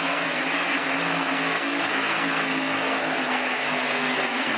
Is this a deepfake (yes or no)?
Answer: yes